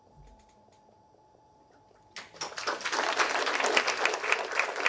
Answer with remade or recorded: recorded